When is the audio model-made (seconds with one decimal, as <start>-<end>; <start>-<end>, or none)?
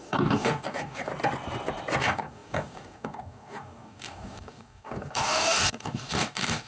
0.0-1.1; 2.0-6.7